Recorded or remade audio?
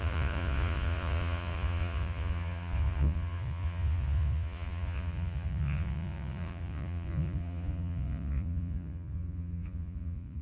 remade